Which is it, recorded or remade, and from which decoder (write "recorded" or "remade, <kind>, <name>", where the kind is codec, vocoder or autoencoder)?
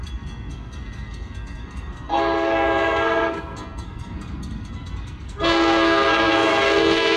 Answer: remade, codec, SNAC